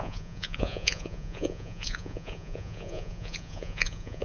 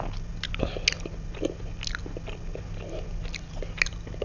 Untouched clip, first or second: second